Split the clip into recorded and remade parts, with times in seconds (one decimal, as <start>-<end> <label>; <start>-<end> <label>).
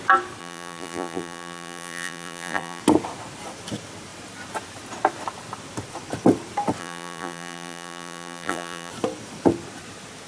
0.0-0.4 recorded; 0.4-2.8 remade; 2.8-6.8 recorded; 6.8-8.9 remade; 8.9-10.3 recorded